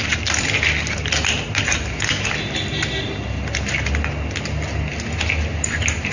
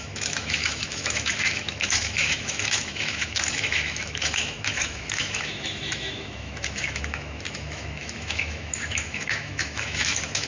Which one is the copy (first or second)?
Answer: second